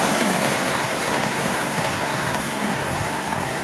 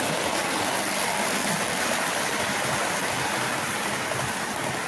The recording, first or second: second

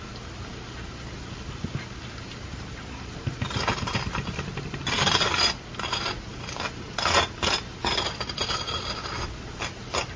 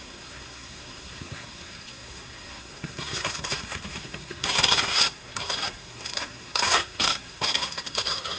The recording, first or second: first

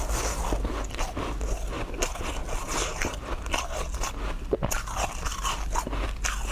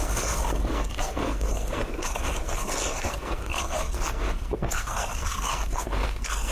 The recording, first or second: first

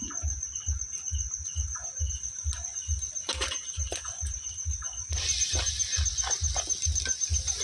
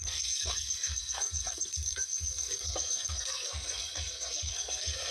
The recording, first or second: first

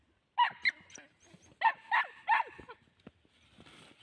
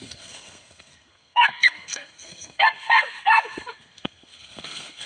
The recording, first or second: first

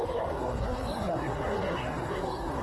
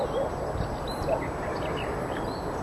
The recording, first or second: second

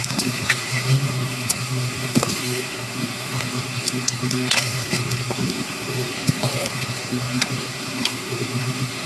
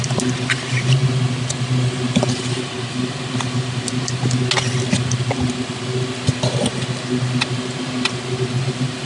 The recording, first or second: second